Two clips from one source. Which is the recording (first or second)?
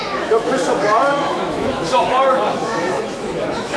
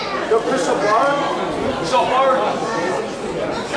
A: second